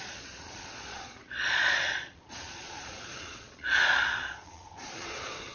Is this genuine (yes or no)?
no